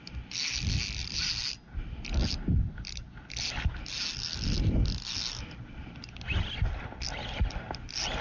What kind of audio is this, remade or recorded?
recorded